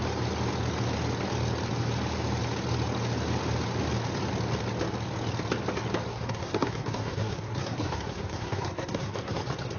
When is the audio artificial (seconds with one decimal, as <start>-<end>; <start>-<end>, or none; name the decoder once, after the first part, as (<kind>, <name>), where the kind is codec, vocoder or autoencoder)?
6.1-9.4 (codec, SNAC)